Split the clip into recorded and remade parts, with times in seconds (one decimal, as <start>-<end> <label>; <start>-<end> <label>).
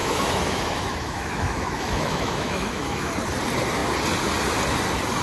0.0-3.1 remade; 3.1-5.2 recorded